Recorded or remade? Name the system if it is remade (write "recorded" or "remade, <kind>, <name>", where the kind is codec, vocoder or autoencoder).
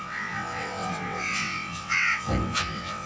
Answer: remade, vocoder, WaveNeXt